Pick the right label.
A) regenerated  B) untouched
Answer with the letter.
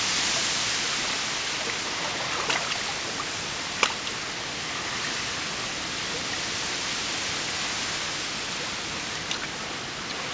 B